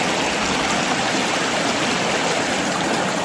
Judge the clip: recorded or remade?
recorded